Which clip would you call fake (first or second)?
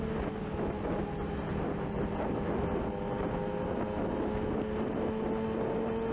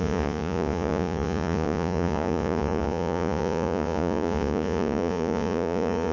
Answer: second